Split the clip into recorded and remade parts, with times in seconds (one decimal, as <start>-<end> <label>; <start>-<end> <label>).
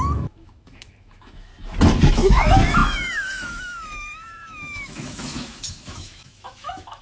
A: 0.0-1.5 remade; 1.5-2.1 recorded; 2.1-7.0 remade